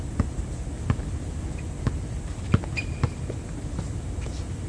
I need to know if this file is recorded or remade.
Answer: recorded